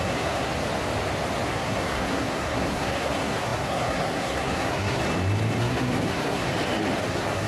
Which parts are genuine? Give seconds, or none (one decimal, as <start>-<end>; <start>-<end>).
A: 0.5-1.5; 5.0-5.6; 6.5-7.1